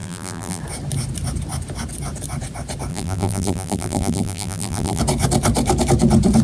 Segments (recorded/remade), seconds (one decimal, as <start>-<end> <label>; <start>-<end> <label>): 0.0-0.6 remade; 0.6-2.9 recorded; 2.9-5.0 remade; 5.0-6.4 recorded